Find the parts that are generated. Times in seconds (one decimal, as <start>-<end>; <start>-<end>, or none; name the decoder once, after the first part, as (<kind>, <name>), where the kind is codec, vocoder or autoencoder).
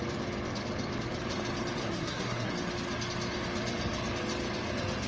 1.8-2.5 (codec, SNAC)